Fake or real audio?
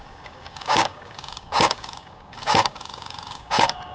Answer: fake